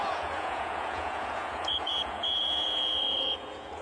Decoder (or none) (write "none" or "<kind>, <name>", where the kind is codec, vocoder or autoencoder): vocoder, Vocos